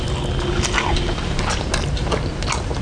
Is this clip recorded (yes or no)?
yes